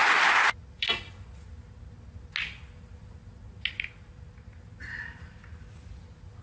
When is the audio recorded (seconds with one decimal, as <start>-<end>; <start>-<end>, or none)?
0.0-6.4